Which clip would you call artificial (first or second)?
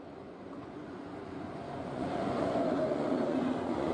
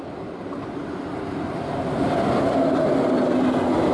first